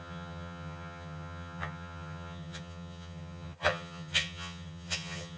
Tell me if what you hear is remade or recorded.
remade